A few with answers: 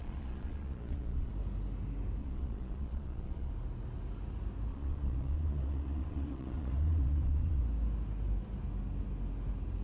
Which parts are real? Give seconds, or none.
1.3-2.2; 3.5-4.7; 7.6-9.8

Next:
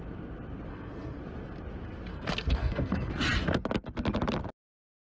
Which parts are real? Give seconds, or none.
0.0-0.7; 1.2-2.1; 3.1-5.0